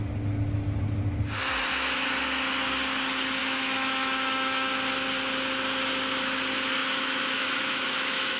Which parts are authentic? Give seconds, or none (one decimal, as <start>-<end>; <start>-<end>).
0.0-3.4; 4.7-6.8